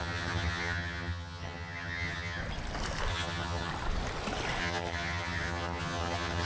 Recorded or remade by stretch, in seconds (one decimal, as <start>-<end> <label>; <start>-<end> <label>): 0.0-2.4 remade; 2.4-3.1 recorded; 3.1-3.7 remade; 3.7-4.6 recorded; 4.6-6.5 remade